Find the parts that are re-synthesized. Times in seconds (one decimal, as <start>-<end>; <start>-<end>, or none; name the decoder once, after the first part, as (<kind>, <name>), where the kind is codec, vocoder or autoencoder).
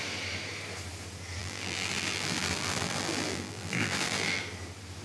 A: 1.4-4.4 (vocoder, BigVGAN v2)